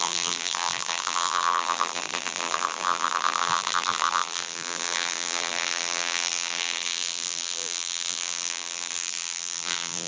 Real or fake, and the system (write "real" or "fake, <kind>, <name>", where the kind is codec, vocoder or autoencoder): fake, vocoder, BigVGAN v2